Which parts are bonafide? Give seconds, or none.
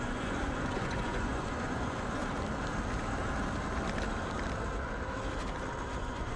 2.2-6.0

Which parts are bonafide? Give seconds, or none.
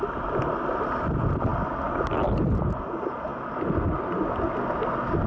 0.0-5.3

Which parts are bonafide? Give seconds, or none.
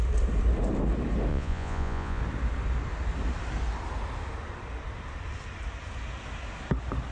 0.0-1.3; 2.2-7.1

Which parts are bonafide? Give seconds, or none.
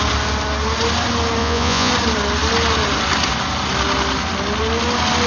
0.0-1.4; 1.9-5.3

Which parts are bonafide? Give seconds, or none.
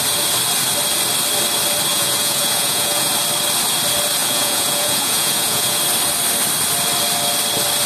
0.0-1.9; 3.1-4.2; 5.8-7.9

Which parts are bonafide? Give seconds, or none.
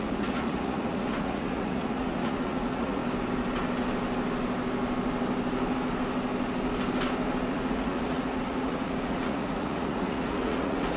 3.0-7.5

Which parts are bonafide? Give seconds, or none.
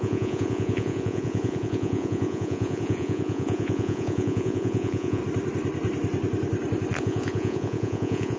5.2-7.0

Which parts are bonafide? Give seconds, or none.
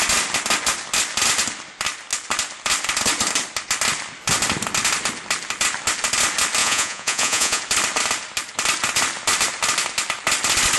0.0-6.6; 7.6-10.8